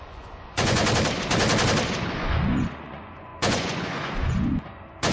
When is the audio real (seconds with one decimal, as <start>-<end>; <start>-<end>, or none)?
0.8-2.2